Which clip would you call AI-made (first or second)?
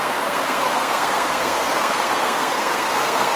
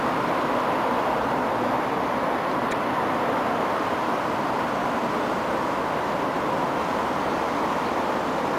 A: first